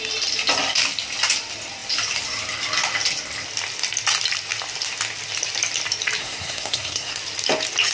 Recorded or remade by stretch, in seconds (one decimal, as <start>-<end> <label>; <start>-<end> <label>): 0.0-6.2 recorded; 6.2-7.2 remade; 7.2-7.9 recorded